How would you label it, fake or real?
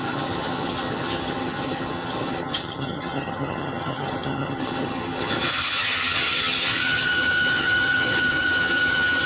fake